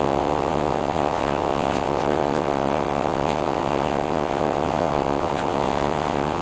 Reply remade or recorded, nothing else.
remade